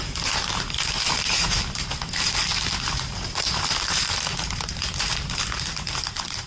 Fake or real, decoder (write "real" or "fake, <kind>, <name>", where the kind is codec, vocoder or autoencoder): fake, vocoder, BigVGAN v2